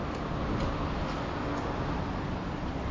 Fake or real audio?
real